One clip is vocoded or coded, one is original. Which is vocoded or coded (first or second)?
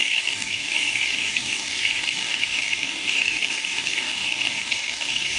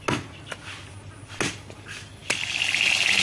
first